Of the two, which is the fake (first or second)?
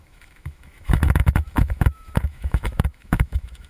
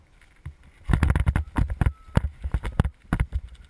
first